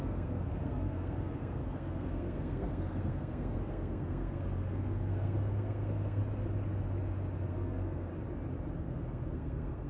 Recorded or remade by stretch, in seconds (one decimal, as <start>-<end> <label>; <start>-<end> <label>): 0.0-6.2 remade; 6.2-7.5 recorded; 7.5-8.1 remade; 8.1-8.8 recorded; 8.8-9.9 remade

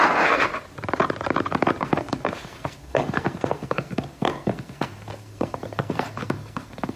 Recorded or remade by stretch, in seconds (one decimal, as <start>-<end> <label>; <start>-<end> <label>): 0.0-0.5 remade; 0.5-1.8 recorded; 1.8-7.0 remade

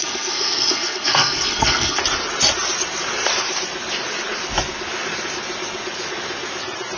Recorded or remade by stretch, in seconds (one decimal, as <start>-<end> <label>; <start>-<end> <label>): 0.0-2.0 remade; 2.0-7.0 recorded

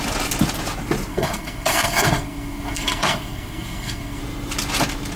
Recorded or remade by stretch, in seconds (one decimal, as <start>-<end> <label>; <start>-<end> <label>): 0.0-1.1 recorded; 1.1-4.2 remade; 4.2-5.2 recorded